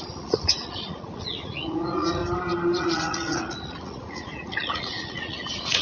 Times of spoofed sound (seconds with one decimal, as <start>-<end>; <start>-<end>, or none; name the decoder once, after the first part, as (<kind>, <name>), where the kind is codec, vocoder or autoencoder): 0.0-2.2 (vocoder, Vocos); 2.8-5.8